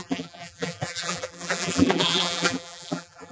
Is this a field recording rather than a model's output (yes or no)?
no